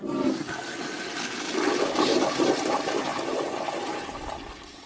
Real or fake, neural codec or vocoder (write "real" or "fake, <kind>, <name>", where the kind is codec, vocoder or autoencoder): real